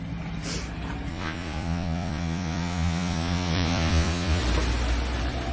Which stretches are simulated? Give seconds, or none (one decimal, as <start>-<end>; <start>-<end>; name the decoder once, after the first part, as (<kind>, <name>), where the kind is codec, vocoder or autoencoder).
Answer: 1.1-4.4 (vocoder, Vocos)

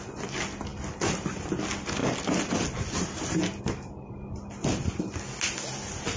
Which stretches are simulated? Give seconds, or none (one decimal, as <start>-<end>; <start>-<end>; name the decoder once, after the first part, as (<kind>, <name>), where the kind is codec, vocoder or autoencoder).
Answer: none

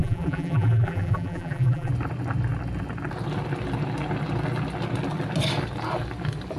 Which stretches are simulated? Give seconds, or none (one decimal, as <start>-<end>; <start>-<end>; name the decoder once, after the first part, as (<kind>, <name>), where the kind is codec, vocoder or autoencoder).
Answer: 0.0-1.9 (vocoder, BigVGAN v2)

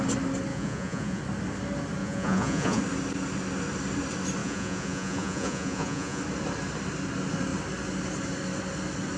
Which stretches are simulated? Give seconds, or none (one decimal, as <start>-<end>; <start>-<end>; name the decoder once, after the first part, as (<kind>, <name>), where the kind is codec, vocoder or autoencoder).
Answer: 0.5-1.2 (vocoder, Vocos); 2.0-2.8; 4.4-6.2

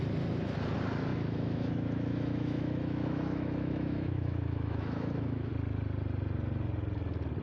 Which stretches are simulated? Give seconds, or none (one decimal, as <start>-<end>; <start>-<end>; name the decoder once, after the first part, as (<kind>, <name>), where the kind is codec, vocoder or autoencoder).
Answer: 1.1-5.5 (autoencoder, DAC-VAE)